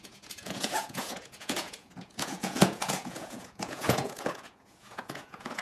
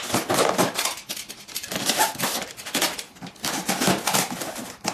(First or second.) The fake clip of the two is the first